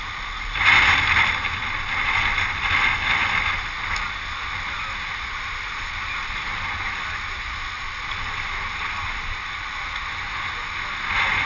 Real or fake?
real